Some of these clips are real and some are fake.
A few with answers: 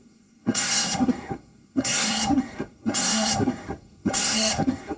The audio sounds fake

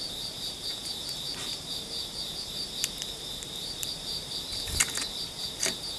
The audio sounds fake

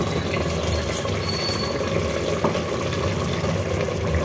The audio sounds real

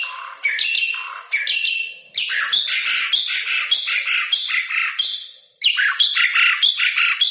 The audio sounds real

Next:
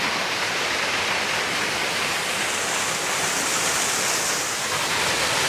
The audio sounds real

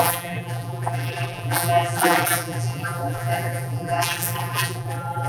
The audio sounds fake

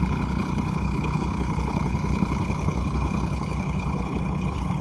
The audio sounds fake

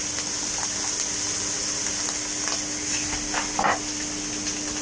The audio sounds real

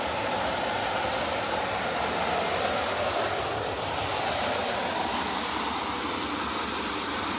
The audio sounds real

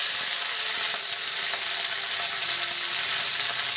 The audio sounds real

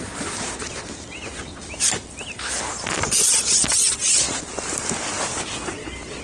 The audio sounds real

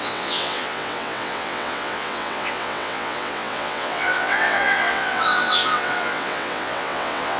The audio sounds fake